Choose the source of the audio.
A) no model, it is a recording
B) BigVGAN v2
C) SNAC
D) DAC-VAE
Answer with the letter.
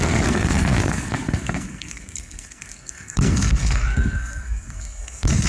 C